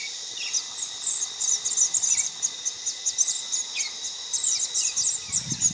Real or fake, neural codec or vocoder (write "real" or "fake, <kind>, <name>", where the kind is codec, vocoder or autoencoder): real